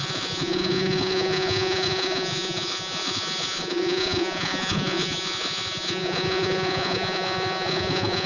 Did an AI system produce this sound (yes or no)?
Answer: yes